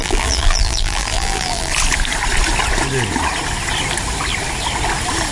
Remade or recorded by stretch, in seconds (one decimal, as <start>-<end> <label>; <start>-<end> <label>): 0.0-1.7 remade; 1.7-5.3 recorded